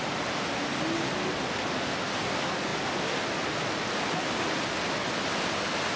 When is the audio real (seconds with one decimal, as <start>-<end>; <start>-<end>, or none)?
0.0-6.0